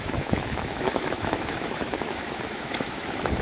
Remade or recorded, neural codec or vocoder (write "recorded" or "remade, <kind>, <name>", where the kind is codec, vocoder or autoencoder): remade, autoencoder, DAC-VAE